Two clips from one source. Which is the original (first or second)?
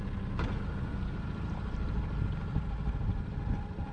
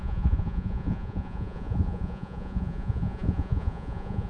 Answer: first